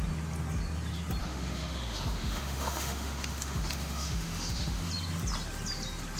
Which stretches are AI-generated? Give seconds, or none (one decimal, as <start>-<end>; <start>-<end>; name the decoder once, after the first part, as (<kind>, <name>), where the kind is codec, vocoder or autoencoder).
1.2-4.9 (autoencoder, DAC-VAE)

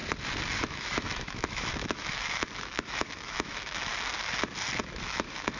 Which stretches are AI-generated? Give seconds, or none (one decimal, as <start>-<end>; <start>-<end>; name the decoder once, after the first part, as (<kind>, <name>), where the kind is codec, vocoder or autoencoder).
0.6-3.9 (autoencoder, DAC-VAE); 4.8-5.6

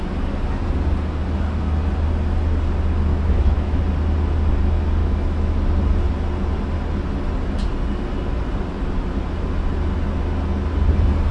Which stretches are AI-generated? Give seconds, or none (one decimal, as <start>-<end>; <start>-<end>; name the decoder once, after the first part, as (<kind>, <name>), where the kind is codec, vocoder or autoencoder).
3.1-3.8 (autoencoder, DAC-VAE); 5.0-5.6